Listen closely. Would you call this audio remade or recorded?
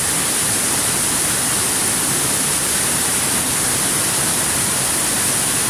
recorded